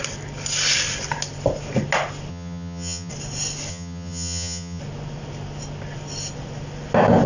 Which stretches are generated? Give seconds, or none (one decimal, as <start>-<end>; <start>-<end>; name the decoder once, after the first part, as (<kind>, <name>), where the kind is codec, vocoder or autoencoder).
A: 2.3-3.1 (vocoder, HiFi-GAN); 3.7-4.8